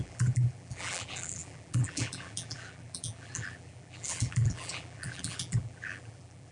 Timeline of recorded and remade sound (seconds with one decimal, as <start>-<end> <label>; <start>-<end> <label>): 0.0-6.5 remade